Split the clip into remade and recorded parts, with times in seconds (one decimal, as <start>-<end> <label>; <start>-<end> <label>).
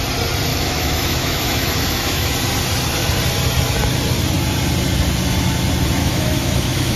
0.0-0.5 recorded; 0.5-2.3 remade; 2.3-6.0 recorded; 6.0-7.0 remade